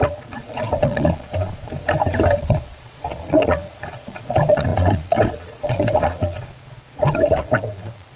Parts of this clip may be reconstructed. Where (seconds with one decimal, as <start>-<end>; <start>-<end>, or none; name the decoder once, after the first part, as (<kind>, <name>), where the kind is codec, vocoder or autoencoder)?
0.0-1.6 (vocoder, Vocos); 2.4-8.2